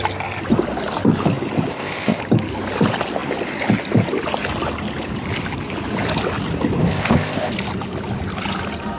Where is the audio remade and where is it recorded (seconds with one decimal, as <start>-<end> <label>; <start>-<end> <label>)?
0.0-1.7 recorded; 1.7-2.2 remade; 2.2-6.8 recorded; 6.8-7.5 remade; 7.5-9.0 recorded